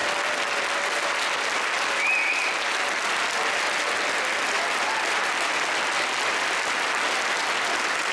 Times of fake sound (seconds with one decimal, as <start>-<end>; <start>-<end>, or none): none